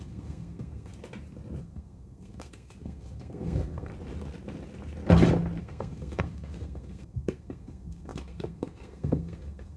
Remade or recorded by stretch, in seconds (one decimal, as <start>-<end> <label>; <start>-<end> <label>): 0.0-0.9 remade; 0.9-1.6 recorded; 1.6-3.9 remade; 3.9-5.6 recorded; 5.6-9.8 remade

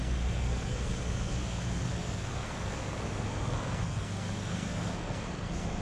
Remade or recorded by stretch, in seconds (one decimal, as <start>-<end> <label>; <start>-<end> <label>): 0.0-5.8 remade

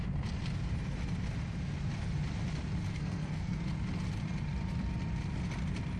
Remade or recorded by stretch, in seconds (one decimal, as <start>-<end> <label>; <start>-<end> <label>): 0.0-2.9 recorded; 2.9-3.6 remade; 3.6-6.0 recorded

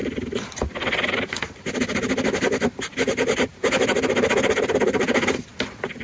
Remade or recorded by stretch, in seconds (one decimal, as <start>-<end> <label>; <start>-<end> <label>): 0.0-6.0 recorded

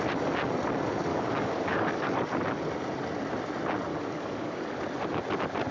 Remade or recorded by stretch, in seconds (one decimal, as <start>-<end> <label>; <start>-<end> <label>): 0.0-1.1 recorded; 1.1-2.3 remade; 2.3-3.9 recorded; 3.9-4.8 remade; 4.8-5.7 recorded

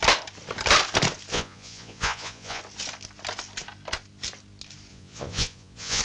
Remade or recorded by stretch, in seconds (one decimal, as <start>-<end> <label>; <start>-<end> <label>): 0.0-1.3 recorded; 1.3-2.6 remade; 2.6-4.9 recorded; 4.9-6.0 remade

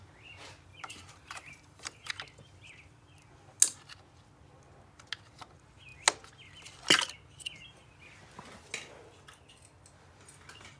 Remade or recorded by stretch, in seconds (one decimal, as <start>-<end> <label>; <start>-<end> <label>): 0.0-0.7 recorded; 0.7-2.1 remade; 2.1-10.8 recorded

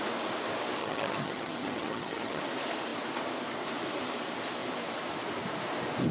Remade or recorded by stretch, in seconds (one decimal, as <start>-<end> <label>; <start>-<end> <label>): 0.0-0.8 recorded; 0.8-2.4 remade; 2.4-6.1 recorded